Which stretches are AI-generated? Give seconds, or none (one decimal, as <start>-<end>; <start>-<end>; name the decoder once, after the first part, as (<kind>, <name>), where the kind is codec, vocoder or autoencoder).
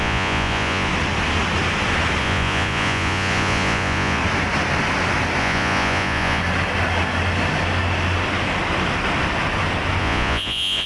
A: 0.0-0.9 (vocoder, Vocos); 2.2-4.2; 5.4-6.4; 10.0-10.9